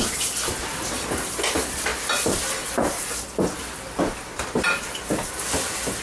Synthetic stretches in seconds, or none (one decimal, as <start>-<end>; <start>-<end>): none